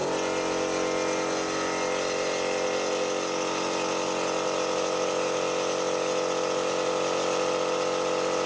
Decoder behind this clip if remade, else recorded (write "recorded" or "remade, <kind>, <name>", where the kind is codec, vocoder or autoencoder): recorded